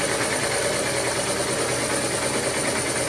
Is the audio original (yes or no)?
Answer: yes